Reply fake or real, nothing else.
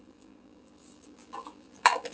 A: fake